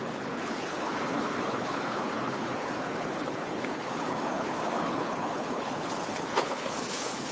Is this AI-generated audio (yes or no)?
yes